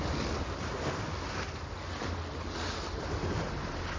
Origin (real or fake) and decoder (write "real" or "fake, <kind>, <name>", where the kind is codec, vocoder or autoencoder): real